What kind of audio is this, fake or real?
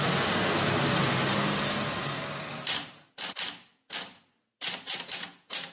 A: real